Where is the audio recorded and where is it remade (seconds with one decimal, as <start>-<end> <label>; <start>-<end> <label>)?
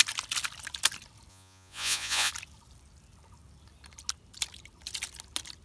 0.0-1.3 recorded; 1.3-2.3 remade; 2.3-5.6 recorded